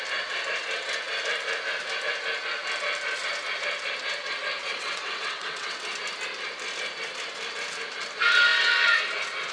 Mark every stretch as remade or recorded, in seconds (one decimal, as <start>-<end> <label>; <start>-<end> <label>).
0.0-4.6 recorded; 4.6-5.8 remade; 5.8-9.5 recorded